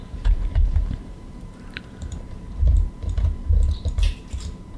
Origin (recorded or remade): remade